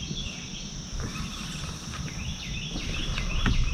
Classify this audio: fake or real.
real